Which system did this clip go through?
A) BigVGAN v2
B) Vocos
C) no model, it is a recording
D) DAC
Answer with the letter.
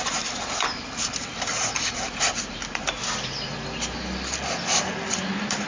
C